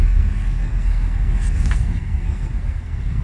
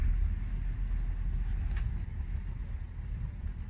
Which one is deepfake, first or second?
first